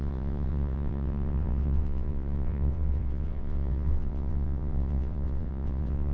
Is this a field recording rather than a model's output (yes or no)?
no